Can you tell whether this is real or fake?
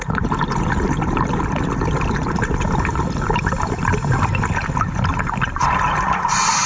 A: real